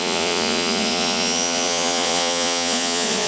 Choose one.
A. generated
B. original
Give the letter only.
A